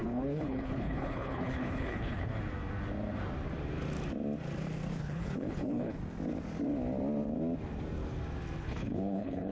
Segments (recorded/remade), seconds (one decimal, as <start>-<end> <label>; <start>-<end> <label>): 0.0-2.3 remade; 2.3-5.0 recorded; 5.0-6.0 remade; 6.0-8.6 recorded; 8.6-9.5 remade